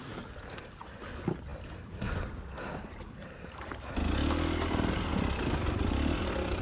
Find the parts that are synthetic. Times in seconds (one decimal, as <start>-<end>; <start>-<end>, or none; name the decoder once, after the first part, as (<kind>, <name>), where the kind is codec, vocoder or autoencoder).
none